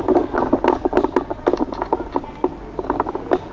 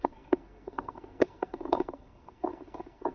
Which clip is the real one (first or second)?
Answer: first